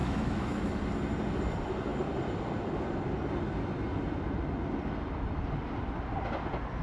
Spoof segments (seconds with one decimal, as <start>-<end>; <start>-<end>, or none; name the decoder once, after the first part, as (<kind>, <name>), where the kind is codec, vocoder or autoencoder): 0.0-0.7 (autoencoder, DAC-VAE)